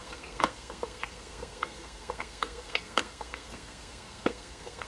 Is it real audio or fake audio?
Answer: fake